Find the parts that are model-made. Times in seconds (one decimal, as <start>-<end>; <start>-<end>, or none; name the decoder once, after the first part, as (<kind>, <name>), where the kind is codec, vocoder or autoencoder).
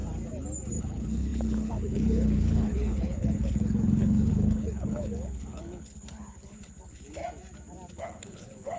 0.8-7.2 (codec, HILCodec); 7.9-8.8